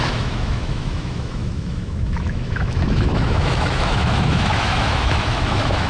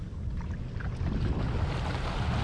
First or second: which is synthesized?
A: first